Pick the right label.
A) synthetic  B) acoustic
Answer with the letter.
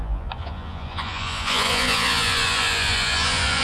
A